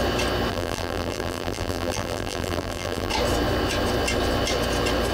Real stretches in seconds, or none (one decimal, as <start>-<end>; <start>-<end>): 0.0-0.5; 3.1-5.1